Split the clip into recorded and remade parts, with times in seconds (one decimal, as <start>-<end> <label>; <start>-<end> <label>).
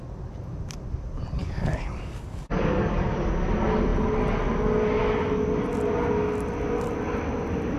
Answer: 0.0-1.4 recorded; 1.4-3.3 remade; 3.3-7.8 recorded